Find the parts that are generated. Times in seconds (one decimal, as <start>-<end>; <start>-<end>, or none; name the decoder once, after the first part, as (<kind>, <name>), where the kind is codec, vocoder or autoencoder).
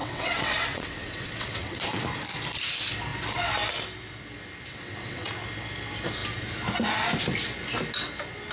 0.0-2.0 (vocoder, WaveNeXt); 4.7-5.3